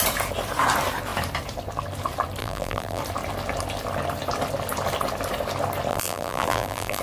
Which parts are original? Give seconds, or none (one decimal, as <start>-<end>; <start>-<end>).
0.0-2.4; 3.0-5.9